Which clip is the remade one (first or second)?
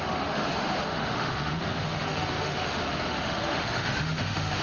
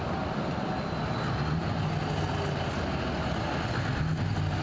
first